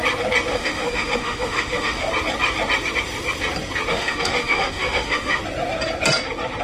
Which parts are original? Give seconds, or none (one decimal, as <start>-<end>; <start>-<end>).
0.0-0.5; 2.1-3.9; 5.4-6.6